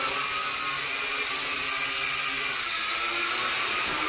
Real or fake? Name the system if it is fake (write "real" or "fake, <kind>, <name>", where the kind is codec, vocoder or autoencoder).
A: real